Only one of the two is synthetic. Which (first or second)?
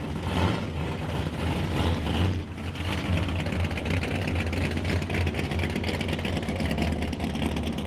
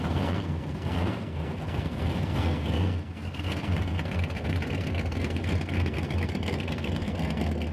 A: second